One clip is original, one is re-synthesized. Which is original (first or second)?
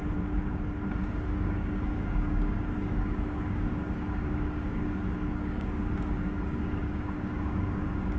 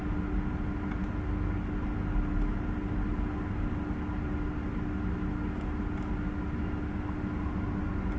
second